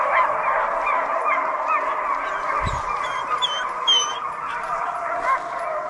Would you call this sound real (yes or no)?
yes